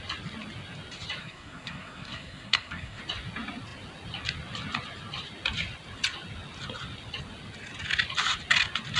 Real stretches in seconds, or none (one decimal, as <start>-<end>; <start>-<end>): 0.0-1.2; 3.0-9.0